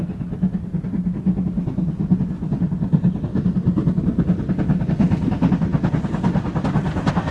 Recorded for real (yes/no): yes